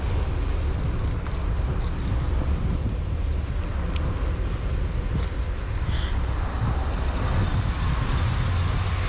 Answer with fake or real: real